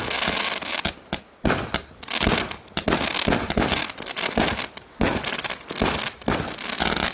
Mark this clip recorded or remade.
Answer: recorded